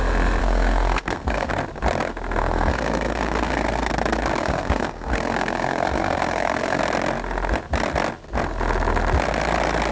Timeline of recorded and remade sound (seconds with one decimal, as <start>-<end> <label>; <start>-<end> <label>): 0.0-0.4 recorded; 0.4-1.5 remade; 1.5-2.4 recorded; 2.4-3.9 remade; 3.9-4.4 recorded; 4.4-6.8 remade; 6.8-9.9 recorded